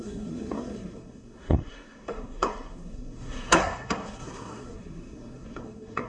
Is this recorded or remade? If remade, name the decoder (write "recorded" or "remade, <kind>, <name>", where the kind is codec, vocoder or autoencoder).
remade, codec, SNAC